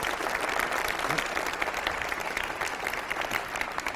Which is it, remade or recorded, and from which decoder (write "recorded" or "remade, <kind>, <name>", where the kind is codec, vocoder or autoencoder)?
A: recorded